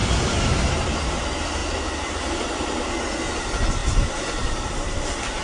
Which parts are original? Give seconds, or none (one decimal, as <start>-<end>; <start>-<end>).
1.2-3.8